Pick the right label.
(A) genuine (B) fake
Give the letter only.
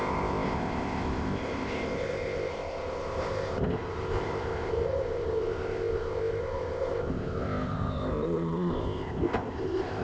B